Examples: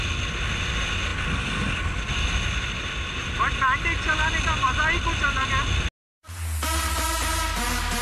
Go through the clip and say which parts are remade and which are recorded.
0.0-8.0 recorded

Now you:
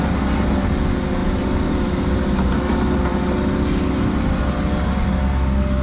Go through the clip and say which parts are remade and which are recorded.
0.0-1.2 recorded; 1.2-2.2 remade; 2.2-5.8 recorded

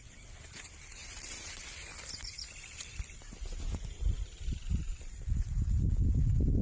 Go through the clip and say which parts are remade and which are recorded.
0.0-6.6 remade

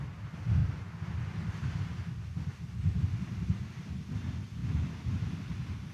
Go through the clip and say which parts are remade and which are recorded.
0.0-5.9 recorded

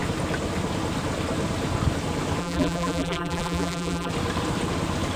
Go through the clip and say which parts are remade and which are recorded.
0.0-2.4 recorded; 2.4-4.1 remade; 4.1-5.2 recorded